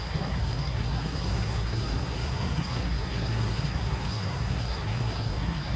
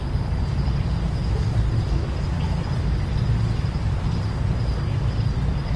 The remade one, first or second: first